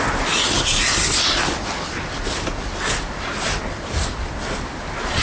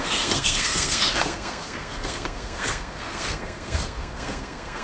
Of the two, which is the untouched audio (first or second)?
first